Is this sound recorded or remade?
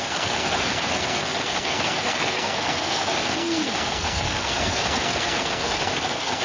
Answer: remade